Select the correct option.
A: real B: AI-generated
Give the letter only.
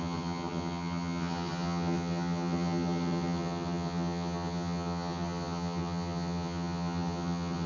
B